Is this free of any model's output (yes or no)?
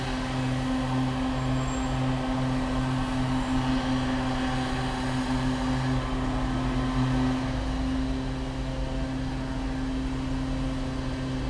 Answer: yes